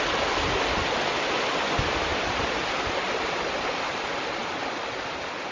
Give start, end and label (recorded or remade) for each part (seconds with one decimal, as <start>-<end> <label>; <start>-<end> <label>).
0.0-5.5 recorded